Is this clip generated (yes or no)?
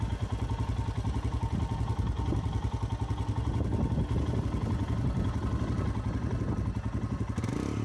no